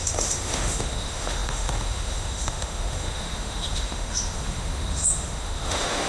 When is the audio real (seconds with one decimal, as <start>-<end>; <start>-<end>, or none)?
none

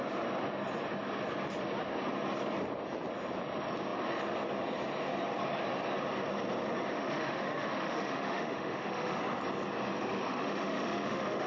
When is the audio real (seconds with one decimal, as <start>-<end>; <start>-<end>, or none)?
0.0-6.9; 9.2-10.3

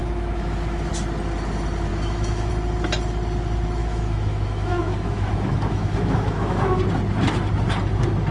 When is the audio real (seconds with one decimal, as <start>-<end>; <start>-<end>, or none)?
0.9-1.9; 2.5-3.8; 6.8-8.3

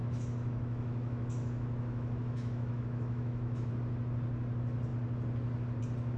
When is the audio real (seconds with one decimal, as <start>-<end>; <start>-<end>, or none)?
3.7-6.2

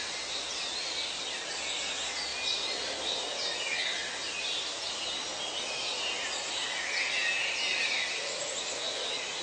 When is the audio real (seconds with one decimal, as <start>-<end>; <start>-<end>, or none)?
0.0-9.4

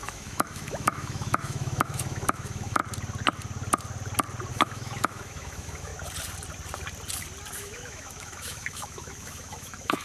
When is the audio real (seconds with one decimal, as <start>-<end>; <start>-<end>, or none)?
2.8-4.5; 5.9-7.6